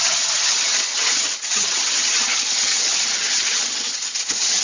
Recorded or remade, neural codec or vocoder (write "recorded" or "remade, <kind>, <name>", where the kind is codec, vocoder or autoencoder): remade, vocoder, HiFi-GAN